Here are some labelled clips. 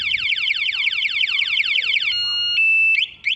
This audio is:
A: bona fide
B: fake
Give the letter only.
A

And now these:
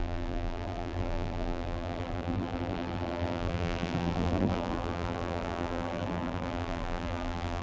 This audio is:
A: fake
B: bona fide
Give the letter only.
A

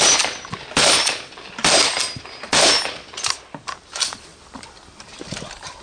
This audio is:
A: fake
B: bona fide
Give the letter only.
A